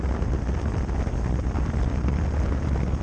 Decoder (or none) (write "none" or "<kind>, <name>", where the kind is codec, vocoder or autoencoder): none